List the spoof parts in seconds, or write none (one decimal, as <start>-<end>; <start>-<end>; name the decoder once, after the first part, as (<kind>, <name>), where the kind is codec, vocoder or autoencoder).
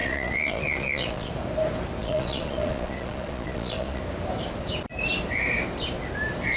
0.0-1.3 (vocoder, Vocos); 2.0-4.0